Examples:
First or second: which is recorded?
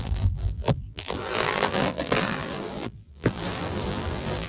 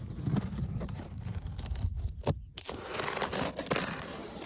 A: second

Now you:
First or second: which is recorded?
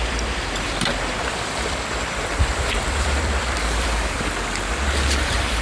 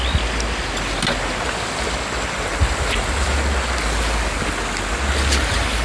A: second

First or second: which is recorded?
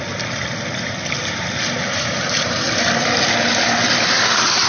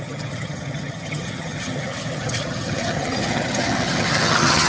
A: first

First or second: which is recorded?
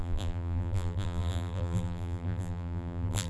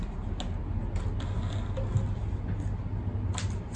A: second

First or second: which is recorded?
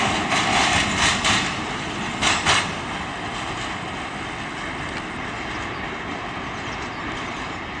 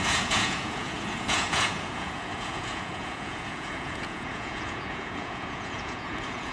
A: first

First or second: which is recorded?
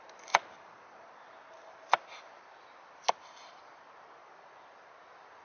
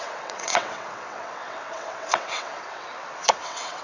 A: first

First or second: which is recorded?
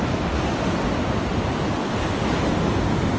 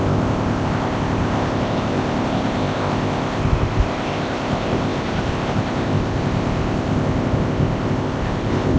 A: first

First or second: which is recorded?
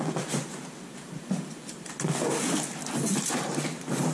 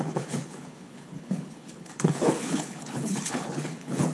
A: first